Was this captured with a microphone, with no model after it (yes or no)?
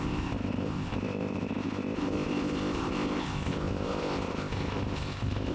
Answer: no